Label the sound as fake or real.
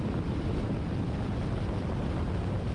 real